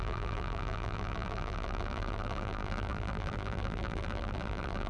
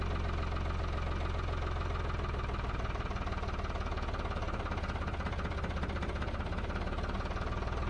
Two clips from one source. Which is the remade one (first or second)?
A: first